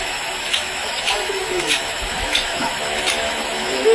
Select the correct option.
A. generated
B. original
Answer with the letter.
A